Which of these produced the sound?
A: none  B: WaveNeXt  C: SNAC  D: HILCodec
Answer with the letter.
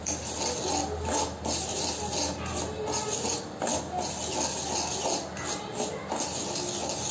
A